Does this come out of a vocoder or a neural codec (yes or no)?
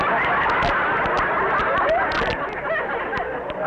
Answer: no